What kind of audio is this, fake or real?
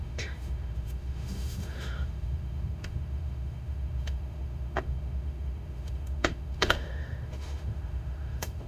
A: fake